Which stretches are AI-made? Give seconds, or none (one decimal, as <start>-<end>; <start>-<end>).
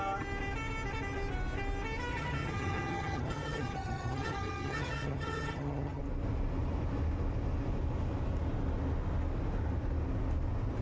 2.1-6.0